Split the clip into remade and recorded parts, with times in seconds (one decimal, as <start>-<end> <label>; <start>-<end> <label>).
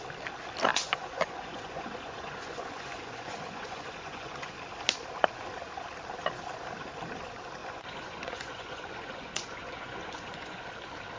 0.0-0.7 recorded; 0.7-4.5 remade; 4.5-7.6 recorded; 7.6-10.7 remade; 10.7-11.2 recorded